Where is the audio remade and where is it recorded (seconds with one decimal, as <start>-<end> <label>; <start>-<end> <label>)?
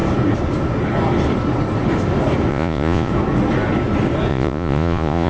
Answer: 0.0-2.5 recorded; 2.5-3.1 remade; 3.1-4.3 recorded; 4.3-5.3 remade